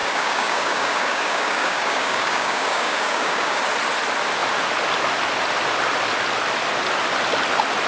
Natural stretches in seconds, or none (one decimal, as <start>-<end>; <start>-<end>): 3.6-7.9